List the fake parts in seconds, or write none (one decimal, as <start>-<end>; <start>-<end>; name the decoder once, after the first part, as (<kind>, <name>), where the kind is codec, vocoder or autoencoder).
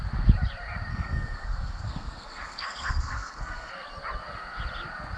0.9-3.7 (codec, SNAC)